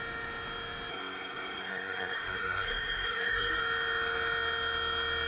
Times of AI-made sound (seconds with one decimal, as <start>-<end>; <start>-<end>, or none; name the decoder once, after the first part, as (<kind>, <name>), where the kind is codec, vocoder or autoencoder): 0.9-3.6 (codec, SNAC)